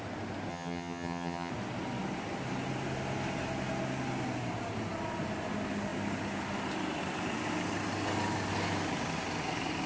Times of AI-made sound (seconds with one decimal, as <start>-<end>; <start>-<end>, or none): 0.5-1.5